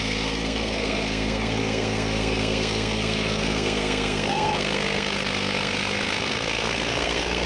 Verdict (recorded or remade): remade